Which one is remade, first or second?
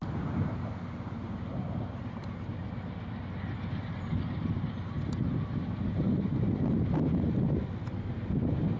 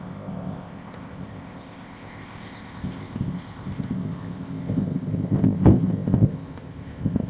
second